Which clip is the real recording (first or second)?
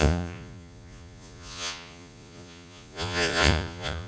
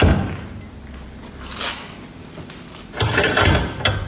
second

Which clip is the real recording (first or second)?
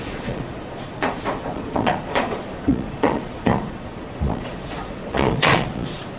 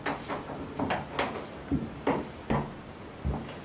second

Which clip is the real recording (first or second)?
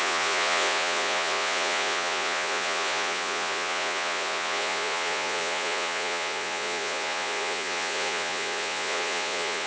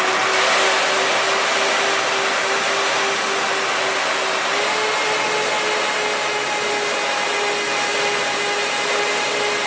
second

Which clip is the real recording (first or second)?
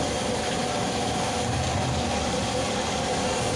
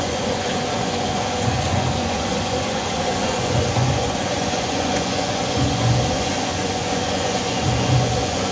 first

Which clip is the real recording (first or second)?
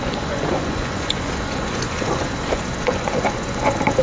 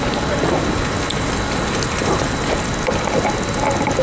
second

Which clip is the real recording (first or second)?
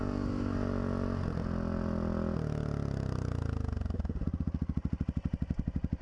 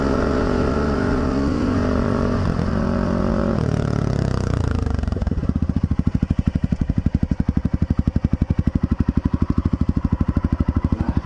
first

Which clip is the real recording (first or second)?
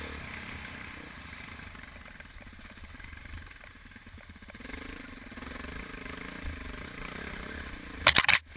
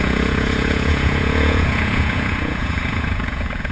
first